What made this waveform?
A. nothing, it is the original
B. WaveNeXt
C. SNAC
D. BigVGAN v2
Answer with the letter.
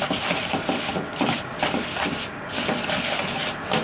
A